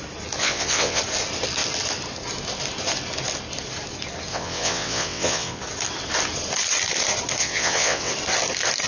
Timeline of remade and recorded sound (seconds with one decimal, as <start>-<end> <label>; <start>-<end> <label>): 0.0-0.4 recorded; 0.4-1.0 remade; 1.0-4.3 recorded; 4.3-5.6 remade; 5.6-7.4 recorded; 7.4-8.1 remade; 8.1-8.9 recorded